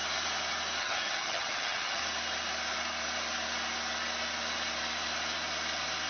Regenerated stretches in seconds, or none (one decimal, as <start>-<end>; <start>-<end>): 0.8-2.0

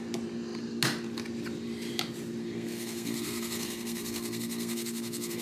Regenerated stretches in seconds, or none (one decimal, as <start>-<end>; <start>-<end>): 2.4-5.4

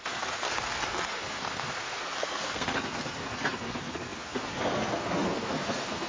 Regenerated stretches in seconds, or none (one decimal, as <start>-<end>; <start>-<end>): 0.0-6.1

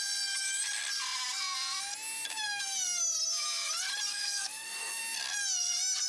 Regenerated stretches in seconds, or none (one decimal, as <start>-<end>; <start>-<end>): 4.1-5.0

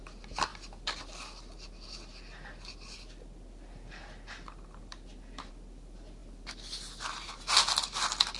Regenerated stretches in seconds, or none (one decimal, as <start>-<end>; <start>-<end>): 0.5-5.5; 6.2-7.4

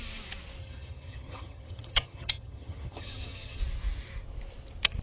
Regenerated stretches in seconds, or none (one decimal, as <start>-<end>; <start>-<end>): 0.6-3.6